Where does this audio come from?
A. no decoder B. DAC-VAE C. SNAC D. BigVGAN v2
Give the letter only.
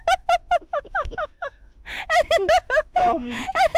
B